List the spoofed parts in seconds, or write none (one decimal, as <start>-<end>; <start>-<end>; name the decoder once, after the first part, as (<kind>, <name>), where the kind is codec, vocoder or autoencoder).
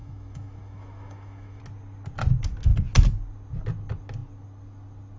0.0-1.6 (autoencoder, DAC-VAE)